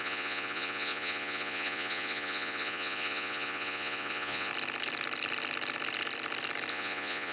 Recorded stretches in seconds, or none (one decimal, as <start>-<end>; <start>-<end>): 4.5-6.7